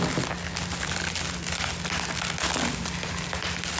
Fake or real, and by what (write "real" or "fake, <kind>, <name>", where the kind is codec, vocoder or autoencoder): real